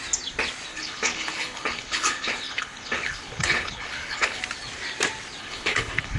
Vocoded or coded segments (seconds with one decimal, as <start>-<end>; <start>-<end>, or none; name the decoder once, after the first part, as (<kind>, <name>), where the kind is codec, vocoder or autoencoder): 0.7-4.4 (codec, HILCodec); 5.4-6.2